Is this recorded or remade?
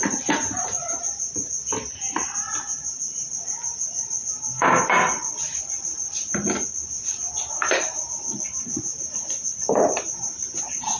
remade